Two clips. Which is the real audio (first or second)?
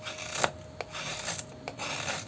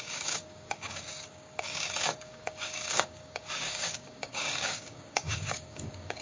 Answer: first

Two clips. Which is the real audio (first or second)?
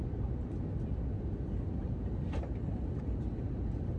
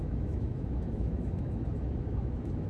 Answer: first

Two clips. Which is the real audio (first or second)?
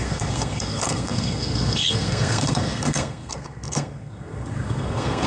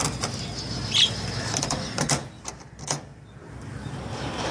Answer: second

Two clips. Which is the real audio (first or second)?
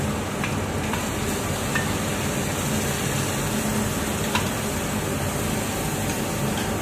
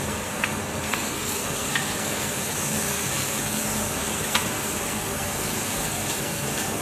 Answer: first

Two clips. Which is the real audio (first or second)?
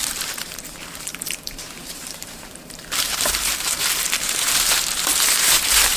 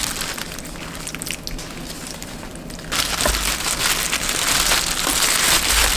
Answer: second